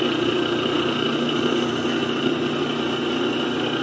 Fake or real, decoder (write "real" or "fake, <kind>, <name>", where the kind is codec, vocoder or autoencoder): real